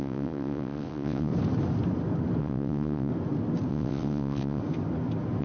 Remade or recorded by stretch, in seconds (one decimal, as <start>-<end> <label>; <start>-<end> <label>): 0.0-1.3 remade; 1.3-2.4 recorded; 2.4-3.1 remade; 3.1-3.7 recorded; 3.7-4.6 remade; 4.6-5.4 recorded